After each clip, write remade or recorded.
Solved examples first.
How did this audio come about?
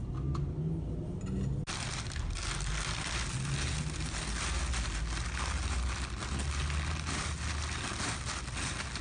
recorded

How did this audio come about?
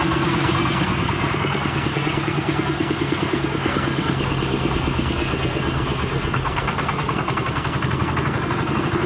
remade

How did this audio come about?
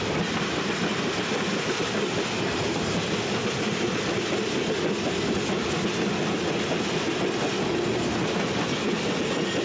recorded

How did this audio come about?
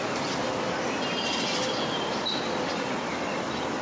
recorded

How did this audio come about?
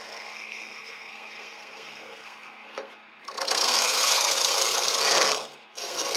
remade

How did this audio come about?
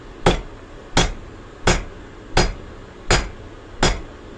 recorded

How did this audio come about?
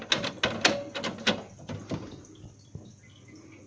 recorded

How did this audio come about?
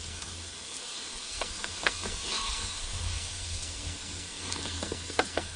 remade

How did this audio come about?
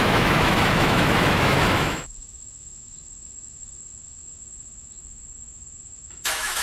remade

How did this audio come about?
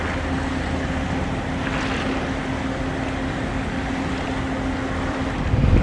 recorded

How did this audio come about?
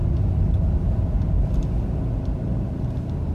recorded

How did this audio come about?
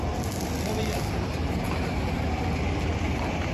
recorded